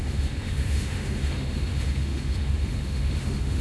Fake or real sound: fake